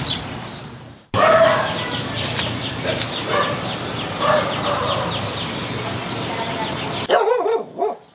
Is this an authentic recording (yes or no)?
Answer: yes